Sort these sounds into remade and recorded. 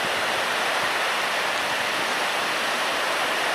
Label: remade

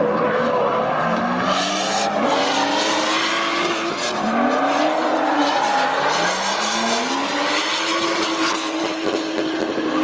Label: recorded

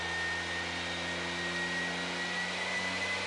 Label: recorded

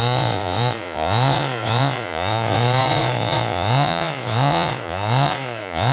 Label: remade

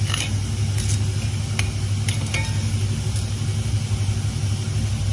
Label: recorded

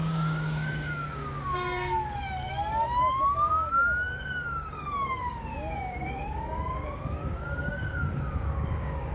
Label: remade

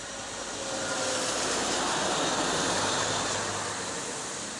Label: recorded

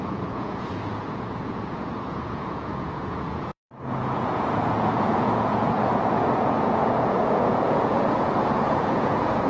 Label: remade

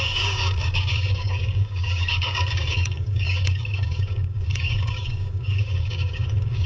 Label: remade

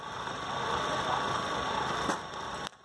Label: recorded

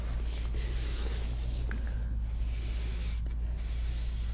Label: recorded